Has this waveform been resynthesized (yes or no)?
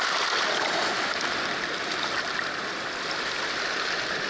no